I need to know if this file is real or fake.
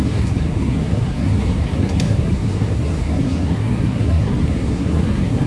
fake